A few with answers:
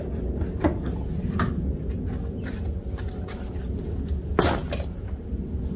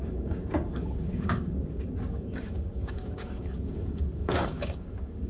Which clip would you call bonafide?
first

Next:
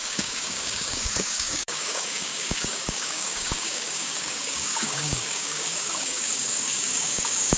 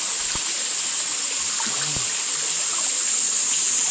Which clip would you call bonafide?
second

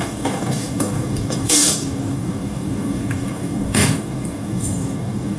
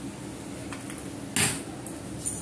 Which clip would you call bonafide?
second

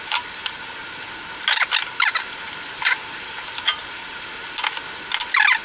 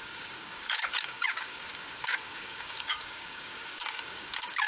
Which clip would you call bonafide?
first